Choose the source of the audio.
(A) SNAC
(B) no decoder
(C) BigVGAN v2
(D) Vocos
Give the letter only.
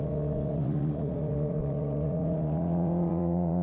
D